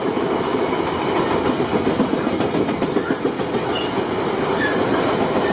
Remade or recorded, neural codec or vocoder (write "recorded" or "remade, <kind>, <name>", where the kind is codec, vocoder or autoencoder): recorded